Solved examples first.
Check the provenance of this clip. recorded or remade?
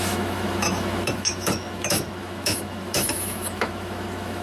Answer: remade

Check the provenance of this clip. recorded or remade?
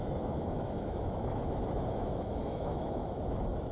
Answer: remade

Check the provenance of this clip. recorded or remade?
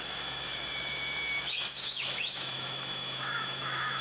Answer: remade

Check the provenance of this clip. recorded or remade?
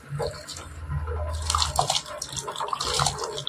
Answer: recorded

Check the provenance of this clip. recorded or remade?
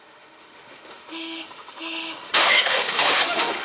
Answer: remade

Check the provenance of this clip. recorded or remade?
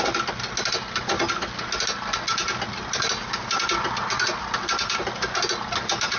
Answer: recorded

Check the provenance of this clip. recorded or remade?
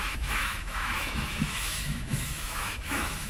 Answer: remade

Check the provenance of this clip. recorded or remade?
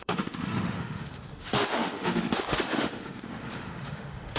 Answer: remade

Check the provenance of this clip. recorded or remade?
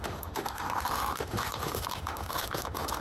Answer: remade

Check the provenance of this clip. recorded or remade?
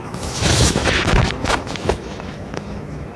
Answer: remade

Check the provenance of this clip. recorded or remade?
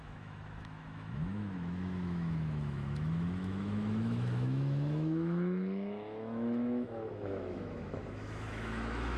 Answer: remade